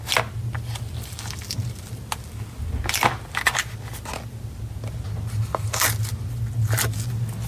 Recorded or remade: recorded